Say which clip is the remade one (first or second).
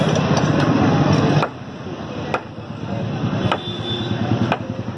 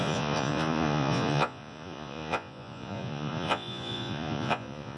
second